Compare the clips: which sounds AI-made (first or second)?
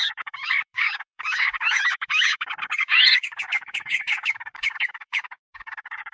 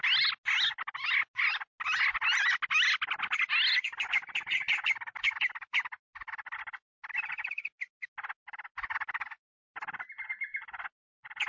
first